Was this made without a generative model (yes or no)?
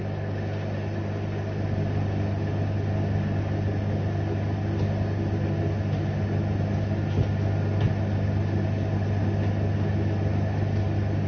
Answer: yes